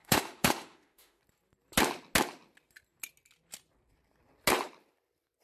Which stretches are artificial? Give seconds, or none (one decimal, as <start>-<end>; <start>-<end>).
0.0-1.2